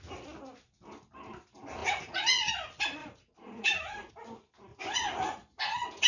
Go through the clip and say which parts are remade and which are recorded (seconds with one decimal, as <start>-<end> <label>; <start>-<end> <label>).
0.0-1.8 recorded; 1.8-2.5 remade; 2.5-3.0 recorded; 3.0-4.1 remade; 4.1-4.7 recorded; 4.7-6.1 remade